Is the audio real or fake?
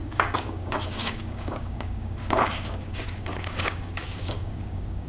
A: fake